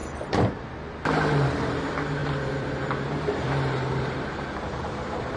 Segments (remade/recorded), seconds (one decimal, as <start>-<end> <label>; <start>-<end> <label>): 0.0-0.7 remade; 0.7-2.2 recorded; 2.2-5.4 remade